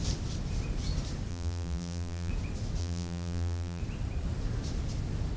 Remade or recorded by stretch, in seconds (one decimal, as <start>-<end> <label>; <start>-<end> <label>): 0.0-1.3 recorded; 1.3-2.3 remade; 2.3-2.8 recorded; 2.8-3.8 remade; 3.8-5.4 recorded